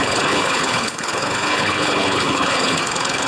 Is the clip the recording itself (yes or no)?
no